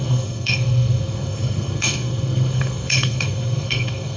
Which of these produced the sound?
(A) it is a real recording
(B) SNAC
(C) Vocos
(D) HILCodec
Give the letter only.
B